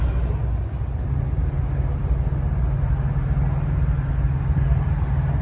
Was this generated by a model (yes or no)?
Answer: no